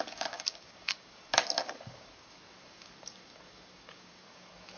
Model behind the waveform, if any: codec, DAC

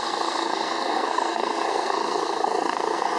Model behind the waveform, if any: codec, SNAC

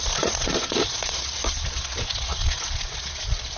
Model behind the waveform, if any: vocoder, Vocos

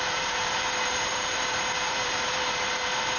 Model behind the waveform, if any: vocoder, BigVGAN v2